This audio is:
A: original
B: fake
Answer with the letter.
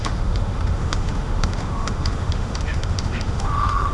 B